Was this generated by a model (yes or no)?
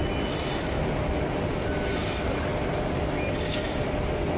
no